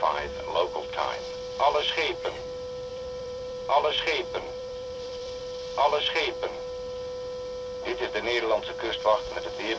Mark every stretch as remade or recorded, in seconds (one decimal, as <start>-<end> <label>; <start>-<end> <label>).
0.0-2.9 recorded; 2.9-5.4 remade; 5.4-9.8 recorded